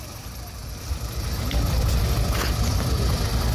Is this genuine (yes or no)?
no